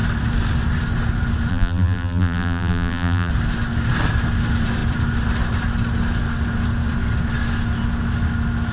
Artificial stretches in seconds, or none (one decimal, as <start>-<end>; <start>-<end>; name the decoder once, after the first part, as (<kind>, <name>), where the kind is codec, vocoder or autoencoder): 1.5-3.3 (vocoder, BigVGAN v2)